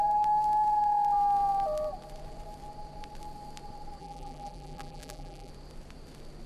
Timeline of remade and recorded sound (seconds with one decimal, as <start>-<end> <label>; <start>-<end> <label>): 0.0-4.0 recorded; 4.0-5.5 remade; 5.5-6.5 recorded